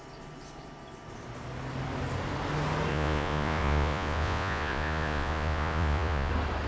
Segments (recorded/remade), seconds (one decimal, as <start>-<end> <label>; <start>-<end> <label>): 0.0-2.9 recorded; 2.9-6.3 remade; 6.3-6.7 recorded